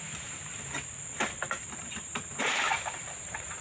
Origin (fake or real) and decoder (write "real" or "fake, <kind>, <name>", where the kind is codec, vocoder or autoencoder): fake, vocoder, BigVGAN v2